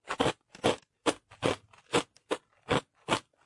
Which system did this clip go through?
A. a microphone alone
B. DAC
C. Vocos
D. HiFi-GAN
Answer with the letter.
A